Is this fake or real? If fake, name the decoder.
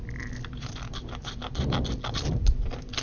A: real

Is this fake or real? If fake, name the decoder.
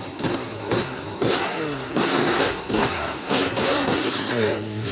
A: fake, codec, SNAC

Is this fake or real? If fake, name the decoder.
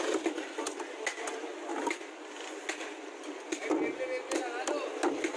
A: real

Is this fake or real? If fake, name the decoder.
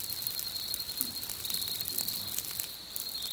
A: real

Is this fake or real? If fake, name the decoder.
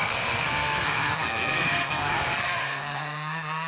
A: fake, codec, SNAC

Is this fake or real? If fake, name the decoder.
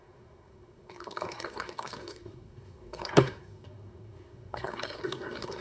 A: fake, codec, SNAC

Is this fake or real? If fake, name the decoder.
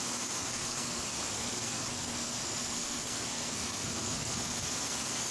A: fake, codec, SNAC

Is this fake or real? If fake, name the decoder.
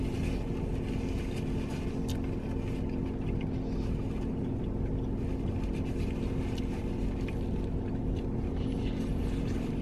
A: real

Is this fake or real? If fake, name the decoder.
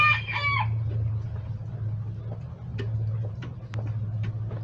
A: real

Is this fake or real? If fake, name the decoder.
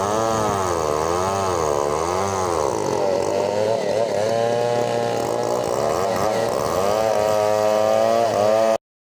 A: real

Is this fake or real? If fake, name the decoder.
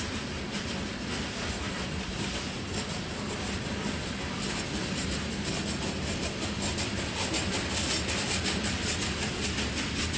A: real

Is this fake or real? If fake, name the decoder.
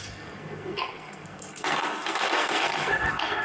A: fake, codec, SNAC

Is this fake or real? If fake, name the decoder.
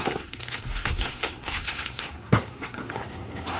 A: fake, codec, SNAC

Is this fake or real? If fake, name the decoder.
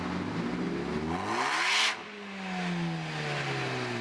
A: real